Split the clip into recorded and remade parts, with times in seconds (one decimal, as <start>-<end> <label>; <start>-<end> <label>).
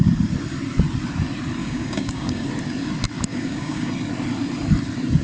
0.0-1.6 recorded; 1.6-2.5 remade; 2.5-3.3 recorded; 3.3-3.9 remade; 3.9-5.2 recorded